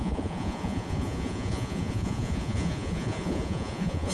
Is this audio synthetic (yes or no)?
yes